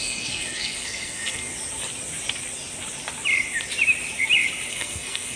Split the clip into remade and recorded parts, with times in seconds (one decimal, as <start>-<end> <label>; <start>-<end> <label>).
0.0-1.5 remade; 1.5-4.7 recorded; 4.7-5.4 remade